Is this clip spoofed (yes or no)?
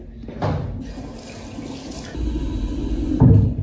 no